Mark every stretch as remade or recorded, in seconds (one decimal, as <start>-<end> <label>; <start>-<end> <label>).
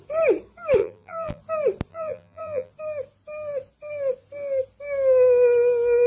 0.0-0.8 recorded; 0.8-1.4 remade; 1.4-1.9 recorded; 1.9-2.7 remade; 2.7-6.1 recorded